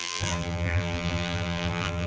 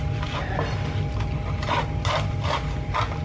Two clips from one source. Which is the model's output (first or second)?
first